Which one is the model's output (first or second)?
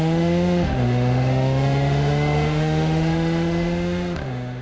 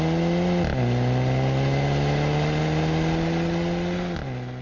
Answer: first